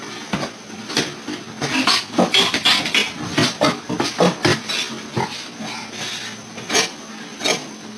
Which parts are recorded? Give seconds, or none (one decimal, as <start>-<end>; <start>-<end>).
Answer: 0.0-8.0